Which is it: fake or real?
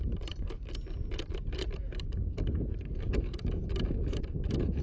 real